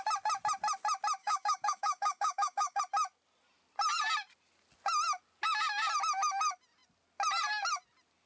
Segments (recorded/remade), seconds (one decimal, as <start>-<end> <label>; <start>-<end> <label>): 0.0-1.2 recorded; 1.2-2.8 remade; 2.8-8.3 recorded